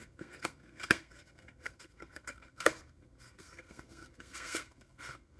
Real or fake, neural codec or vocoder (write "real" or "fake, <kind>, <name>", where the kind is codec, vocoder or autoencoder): fake, codec, SNAC